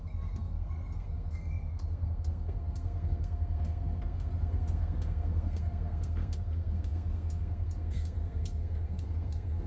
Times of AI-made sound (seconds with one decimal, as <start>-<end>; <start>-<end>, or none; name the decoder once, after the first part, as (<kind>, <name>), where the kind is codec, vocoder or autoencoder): 0.0-9.7 (codec, SNAC)